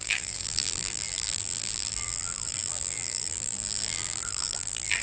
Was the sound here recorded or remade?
remade